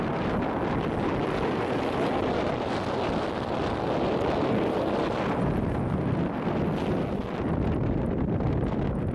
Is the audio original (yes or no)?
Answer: yes